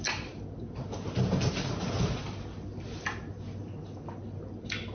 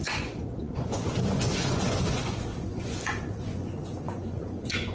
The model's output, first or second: second